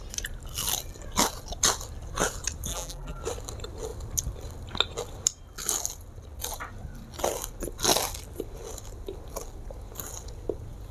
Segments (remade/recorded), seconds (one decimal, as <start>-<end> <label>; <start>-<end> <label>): 0.0-2.7 recorded; 2.7-3.2 remade; 3.2-10.9 recorded